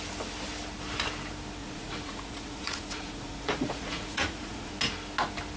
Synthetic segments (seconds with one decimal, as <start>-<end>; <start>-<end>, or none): 1.6-4.7